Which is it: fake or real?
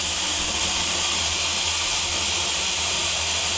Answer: real